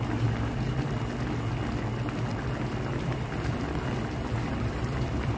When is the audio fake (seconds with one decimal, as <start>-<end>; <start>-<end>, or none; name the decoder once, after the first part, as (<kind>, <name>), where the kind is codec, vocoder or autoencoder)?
2.3-5.4 (vocoder, BigVGAN v2)